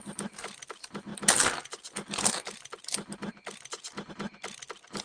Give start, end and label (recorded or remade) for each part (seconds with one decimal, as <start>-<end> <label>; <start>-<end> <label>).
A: 0.0-5.0 recorded